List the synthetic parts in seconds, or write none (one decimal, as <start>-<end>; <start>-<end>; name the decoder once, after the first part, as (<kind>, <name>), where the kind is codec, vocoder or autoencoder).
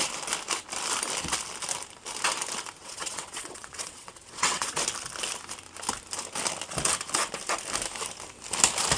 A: 2.8-4.8 (vocoder, WaveNeXt)